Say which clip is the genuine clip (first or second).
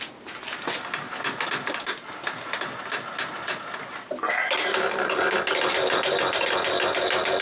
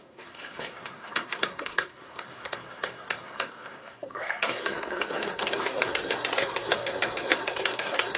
first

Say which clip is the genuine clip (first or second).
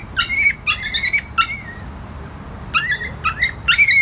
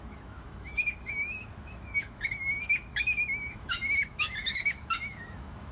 first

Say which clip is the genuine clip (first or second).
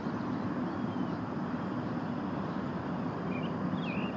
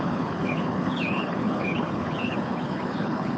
first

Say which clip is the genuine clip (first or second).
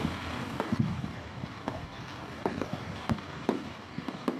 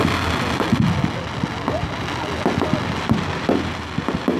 second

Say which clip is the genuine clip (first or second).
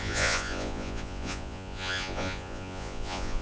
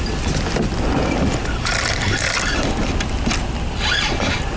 second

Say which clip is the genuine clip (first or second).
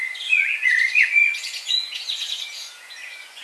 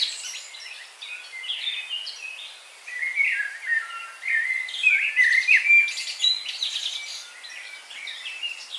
second